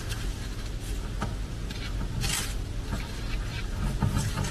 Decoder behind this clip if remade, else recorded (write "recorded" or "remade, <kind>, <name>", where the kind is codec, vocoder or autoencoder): recorded